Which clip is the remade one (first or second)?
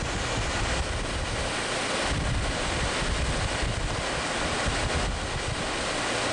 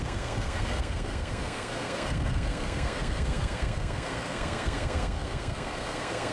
second